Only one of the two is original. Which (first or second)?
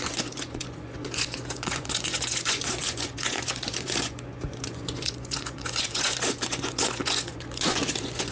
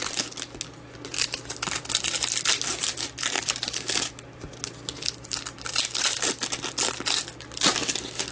second